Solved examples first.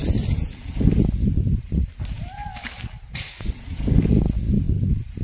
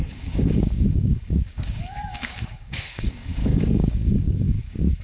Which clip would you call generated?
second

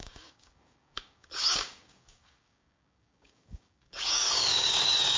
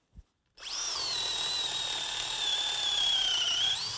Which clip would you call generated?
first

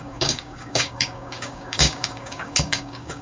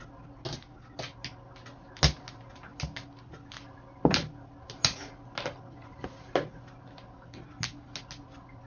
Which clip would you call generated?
first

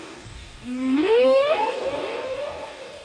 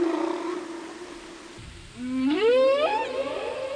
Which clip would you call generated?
first